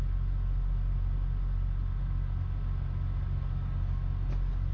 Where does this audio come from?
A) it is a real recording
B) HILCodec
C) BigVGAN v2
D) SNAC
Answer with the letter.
A